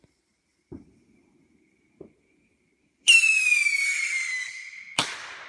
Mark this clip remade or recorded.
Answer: recorded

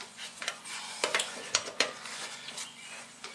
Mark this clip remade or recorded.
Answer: remade